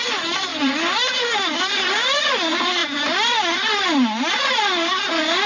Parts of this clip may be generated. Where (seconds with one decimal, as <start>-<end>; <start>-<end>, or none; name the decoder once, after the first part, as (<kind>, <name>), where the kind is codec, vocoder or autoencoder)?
none